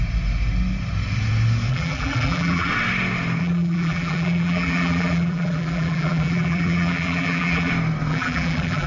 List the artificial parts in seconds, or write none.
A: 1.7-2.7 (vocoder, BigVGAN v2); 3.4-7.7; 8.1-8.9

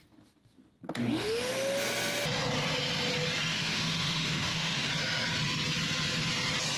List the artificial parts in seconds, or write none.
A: 1.0-1.5 (autoencoder, DAC-VAE); 3.5-4.9